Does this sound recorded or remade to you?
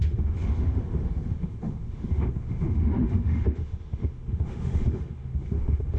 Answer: remade